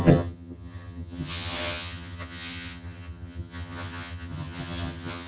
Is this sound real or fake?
fake